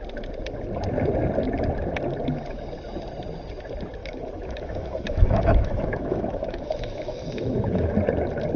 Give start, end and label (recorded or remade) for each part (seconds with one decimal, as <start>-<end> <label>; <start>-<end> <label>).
0.0-4.0 recorded; 4.0-7.9 remade; 7.9-8.6 recorded

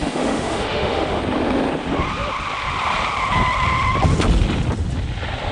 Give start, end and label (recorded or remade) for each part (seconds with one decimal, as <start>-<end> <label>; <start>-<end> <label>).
0.0-1.2 remade; 1.2-5.5 recorded